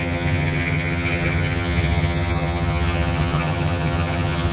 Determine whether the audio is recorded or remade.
remade